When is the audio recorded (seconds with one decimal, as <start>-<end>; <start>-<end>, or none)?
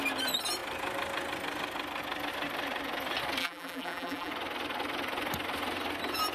0.0-3.4; 4.3-6.3